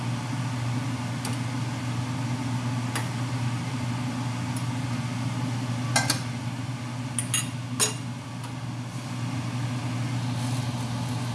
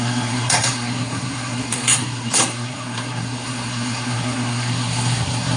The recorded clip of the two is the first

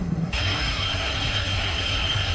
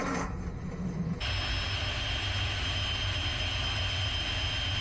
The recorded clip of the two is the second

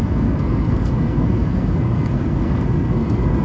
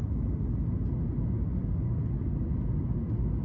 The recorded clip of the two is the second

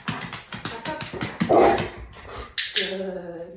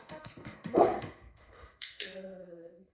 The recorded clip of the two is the first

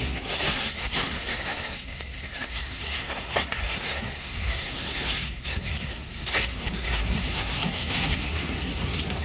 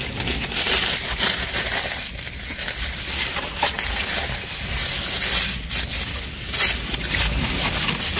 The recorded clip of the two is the second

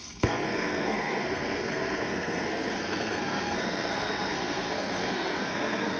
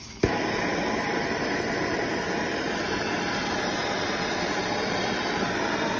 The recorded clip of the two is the second